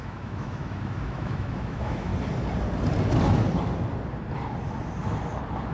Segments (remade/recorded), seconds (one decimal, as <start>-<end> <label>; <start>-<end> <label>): 0.0-2.1 remade; 2.1-5.7 recorded